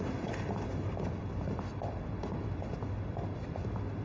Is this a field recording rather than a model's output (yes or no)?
yes